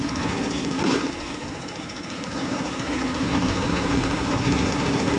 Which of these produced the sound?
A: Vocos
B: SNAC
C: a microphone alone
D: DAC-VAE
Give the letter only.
B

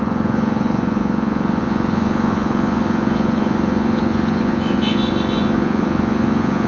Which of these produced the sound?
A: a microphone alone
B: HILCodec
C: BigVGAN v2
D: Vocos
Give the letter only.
D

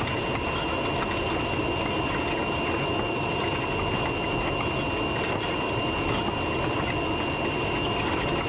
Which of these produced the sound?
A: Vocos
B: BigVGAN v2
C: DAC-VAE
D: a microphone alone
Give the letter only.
D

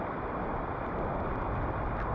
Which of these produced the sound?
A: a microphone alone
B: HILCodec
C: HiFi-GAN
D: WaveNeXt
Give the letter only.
A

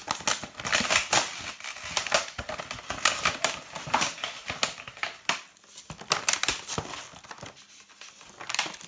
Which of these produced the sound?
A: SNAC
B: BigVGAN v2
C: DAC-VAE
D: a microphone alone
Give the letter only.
D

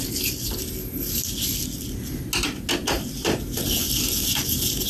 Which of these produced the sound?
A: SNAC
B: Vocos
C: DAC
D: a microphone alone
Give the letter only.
D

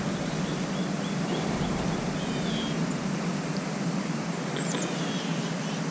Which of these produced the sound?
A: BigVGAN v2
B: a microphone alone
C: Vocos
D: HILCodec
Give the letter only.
B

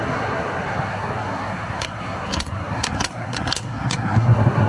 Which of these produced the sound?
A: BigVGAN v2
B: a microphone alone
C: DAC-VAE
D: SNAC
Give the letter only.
D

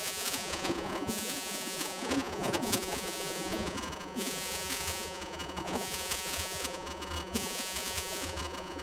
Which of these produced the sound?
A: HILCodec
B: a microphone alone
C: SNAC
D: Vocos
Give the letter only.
D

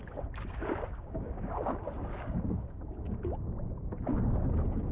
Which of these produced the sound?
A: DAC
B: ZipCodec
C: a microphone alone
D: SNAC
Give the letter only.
A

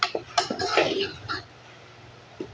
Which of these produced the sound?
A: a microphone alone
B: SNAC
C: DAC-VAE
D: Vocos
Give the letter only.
A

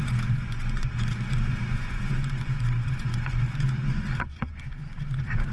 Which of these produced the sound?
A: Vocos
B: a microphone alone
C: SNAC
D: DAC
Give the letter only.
A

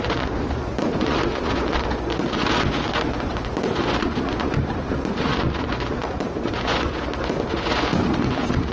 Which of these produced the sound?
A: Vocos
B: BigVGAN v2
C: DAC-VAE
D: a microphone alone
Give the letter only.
A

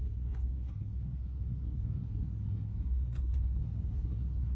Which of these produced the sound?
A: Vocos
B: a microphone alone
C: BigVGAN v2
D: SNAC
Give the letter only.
D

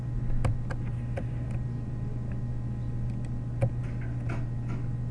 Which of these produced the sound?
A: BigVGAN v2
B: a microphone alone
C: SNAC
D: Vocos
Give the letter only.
B